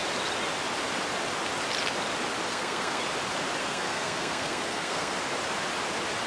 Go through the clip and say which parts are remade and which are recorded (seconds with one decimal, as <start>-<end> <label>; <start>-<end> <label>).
0.0-2.5 recorded; 2.5-3.0 remade; 3.0-3.6 recorded; 3.6-5.2 remade; 5.2-6.3 recorded